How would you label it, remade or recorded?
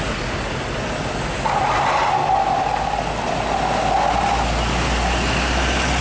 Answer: recorded